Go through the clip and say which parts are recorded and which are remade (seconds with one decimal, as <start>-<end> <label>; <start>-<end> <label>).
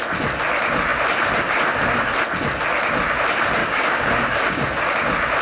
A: 0.0-3.6 recorded; 3.6-4.9 remade; 4.9-5.4 recorded